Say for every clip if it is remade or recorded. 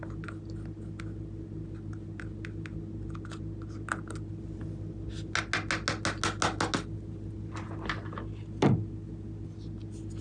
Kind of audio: recorded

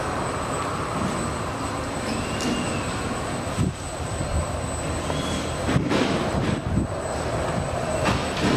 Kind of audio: recorded